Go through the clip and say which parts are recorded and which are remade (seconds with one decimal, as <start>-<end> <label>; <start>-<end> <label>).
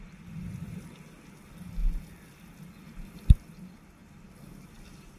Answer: 0.0-1.8 remade; 1.8-2.8 recorded; 2.8-5.2 remade